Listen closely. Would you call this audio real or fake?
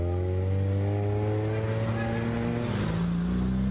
real